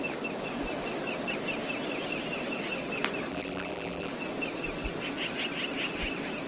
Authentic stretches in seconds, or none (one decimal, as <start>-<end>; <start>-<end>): 0.0-3.3; 4.1-6.5